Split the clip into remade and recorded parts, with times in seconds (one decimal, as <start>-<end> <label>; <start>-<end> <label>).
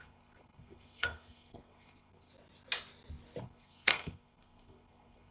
0.0-2.3 remade; 2.3-3.4 recorded; 3.4-5.3 remade